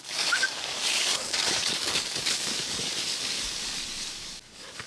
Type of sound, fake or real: fake